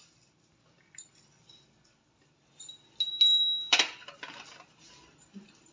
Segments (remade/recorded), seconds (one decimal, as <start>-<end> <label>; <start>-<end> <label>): 0.0-5.7 recorded